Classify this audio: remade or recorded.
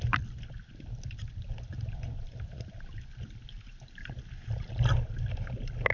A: recorded